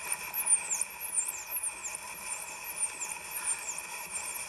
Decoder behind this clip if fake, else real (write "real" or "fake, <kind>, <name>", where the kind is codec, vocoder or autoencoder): real